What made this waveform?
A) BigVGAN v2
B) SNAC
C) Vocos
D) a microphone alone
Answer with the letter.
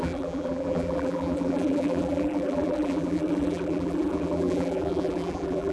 A